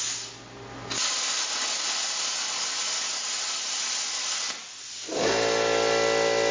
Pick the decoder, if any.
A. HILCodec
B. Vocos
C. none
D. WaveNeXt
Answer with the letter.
C